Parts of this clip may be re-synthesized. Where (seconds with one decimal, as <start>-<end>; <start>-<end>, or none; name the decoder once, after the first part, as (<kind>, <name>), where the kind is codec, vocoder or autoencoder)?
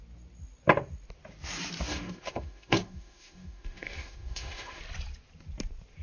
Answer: 1.9-4.8 (autoencoder, DAC-VAE)